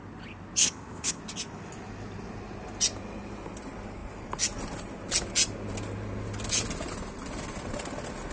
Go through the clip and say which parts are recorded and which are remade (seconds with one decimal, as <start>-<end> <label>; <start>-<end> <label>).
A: 0.0-0.6 recorded; 0.6-1.2 remade; 1.2-8.3 recorded